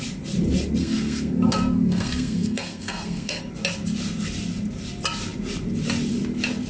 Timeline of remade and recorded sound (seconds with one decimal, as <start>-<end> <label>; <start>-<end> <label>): 0.0-0.8 recorded; 0.8-3.4 remade; 3.4-6.7 recorded